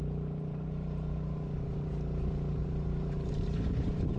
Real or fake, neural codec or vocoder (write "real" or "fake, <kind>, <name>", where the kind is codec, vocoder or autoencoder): fake, vocoder, BigVGAN v2